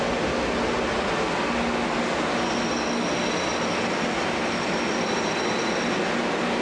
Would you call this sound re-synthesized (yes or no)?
no